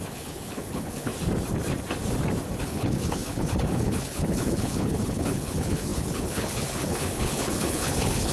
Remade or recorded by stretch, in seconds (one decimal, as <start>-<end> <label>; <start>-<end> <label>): 0.0-1.1 remade; 1.1-2.6 recorded; 2.6-8.3 remade